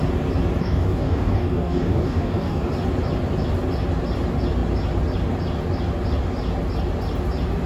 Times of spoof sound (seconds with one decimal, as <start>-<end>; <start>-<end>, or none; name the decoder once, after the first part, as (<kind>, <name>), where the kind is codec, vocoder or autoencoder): 0.6-2.7 (codec, DAC)